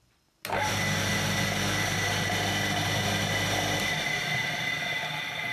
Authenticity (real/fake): real